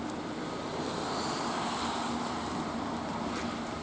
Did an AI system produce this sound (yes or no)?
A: no